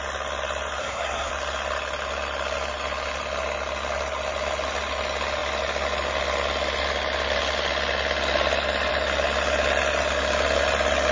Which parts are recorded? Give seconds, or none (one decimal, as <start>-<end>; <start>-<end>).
0.0-0.8; 1.3-11.1